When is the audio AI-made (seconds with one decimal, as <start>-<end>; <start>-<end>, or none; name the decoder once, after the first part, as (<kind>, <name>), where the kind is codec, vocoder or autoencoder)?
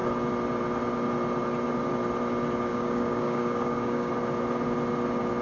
2.7-4.1 (codec, DAC)